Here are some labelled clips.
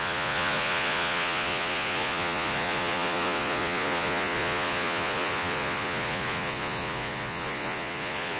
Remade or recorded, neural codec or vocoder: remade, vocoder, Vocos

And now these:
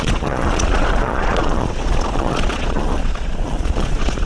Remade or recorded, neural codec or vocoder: remade, vocoder, Vocos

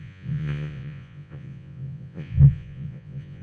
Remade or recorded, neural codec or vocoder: remade, vocoder, Vocos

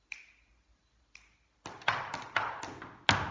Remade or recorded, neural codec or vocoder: recorded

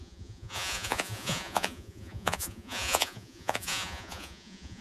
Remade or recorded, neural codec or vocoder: remade, vocoder, Vocos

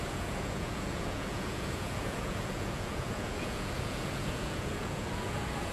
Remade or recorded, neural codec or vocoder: remade, vocoder, Vocos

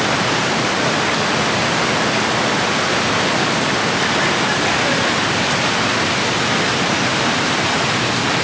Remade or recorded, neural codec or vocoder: recorded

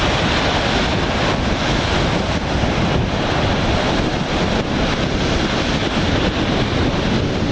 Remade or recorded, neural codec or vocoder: recorded